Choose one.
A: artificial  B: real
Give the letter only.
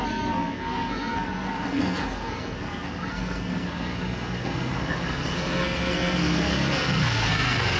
A